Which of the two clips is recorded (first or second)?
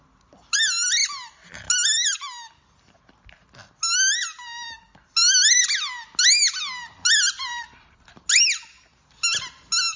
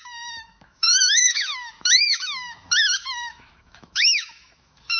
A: first